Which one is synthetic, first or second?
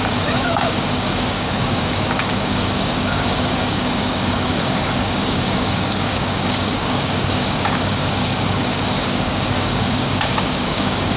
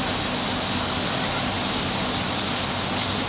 first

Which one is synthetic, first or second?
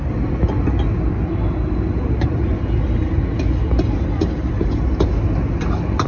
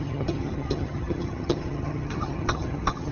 second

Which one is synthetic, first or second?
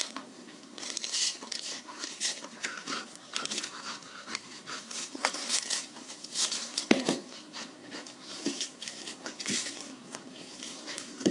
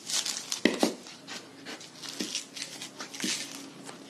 first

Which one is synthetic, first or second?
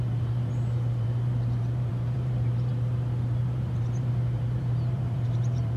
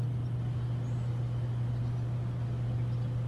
first